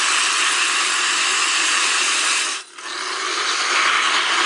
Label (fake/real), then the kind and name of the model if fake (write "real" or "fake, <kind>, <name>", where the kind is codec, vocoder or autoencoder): real